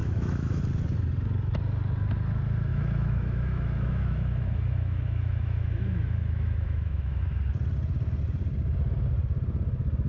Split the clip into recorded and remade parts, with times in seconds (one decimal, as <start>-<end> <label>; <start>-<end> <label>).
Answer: 0.0-0.6 remade; 0.6-2.7 recorded; 2.7-7.2 remade; 7.2-10.1 recorded